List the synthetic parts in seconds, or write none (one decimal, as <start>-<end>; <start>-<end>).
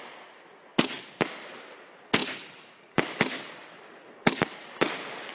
2.2-4.4